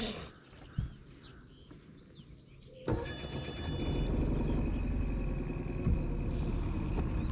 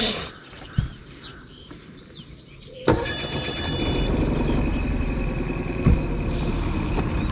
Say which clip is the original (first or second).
first